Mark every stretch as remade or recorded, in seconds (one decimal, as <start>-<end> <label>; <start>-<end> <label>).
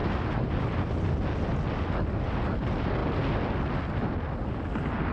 0.0-5.1 recorded